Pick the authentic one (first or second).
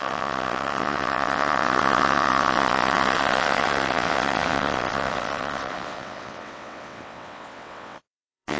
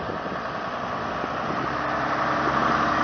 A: second